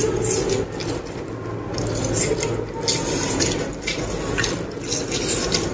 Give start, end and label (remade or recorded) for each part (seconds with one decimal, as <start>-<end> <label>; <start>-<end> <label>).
0.0-5.7 recorded